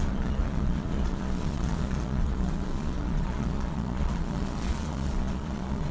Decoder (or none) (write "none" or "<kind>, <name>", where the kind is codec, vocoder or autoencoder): vocoder, Vocos